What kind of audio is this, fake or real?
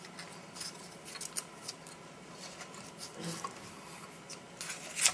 real